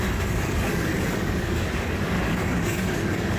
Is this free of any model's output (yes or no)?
no